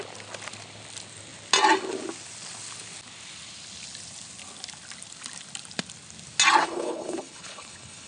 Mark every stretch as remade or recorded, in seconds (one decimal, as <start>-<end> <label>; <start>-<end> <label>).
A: 0.0-6.6 recorded; 6.6-8.1 remade